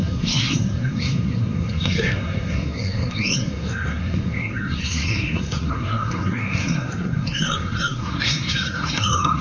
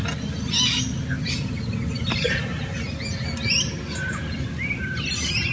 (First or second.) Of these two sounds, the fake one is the first